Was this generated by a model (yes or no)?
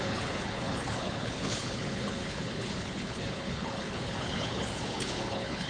yes